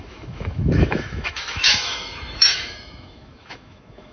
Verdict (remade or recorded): remade